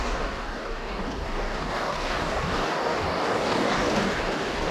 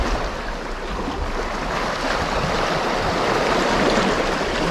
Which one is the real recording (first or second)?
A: second